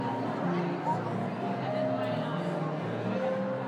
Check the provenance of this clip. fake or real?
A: real